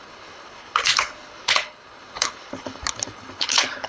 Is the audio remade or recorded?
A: remade